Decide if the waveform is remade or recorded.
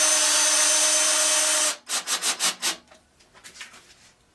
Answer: recorded